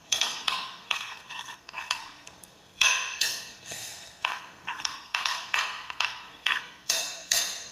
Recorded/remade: remade